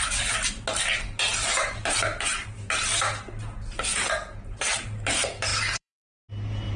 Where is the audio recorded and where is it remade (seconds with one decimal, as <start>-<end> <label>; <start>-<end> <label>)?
0.0-3.9 recorded; 3.9-4.6 remade; 4.6-5.5 recorded; 5.5-6.3 remade; 6.3-6.8 recorded